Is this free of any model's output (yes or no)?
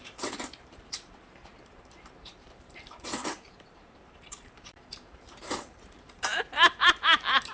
no